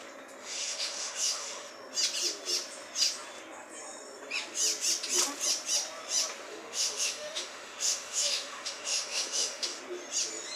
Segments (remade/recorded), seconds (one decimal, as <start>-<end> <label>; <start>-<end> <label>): 0.0-0.4 recorded; 0.4-1.7 remade; 1.7-6.5 recorded; 6.5-9.8 remade; 9.8-10.6 recorded